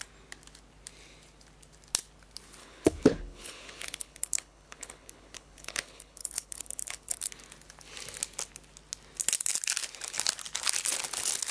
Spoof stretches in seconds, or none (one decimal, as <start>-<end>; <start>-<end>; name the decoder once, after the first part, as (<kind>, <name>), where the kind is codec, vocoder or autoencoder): 2.6-7.3 (codec, HILCodec)